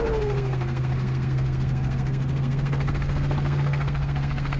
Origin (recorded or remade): remade